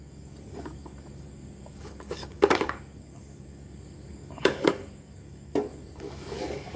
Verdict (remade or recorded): remade